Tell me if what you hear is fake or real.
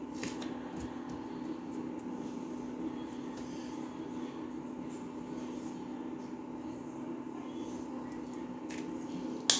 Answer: real